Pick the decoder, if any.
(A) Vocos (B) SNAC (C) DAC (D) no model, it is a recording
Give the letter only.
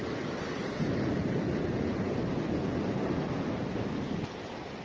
D